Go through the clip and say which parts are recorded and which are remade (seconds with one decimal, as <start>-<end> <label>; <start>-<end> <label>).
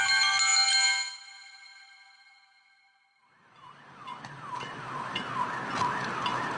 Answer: 0.0-3.2 recorded; 3.2-5.2 remade; 5.2-6.6 recorded